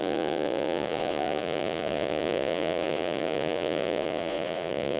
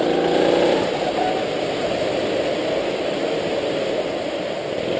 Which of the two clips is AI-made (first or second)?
first